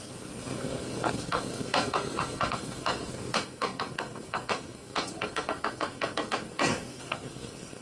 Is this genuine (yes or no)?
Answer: no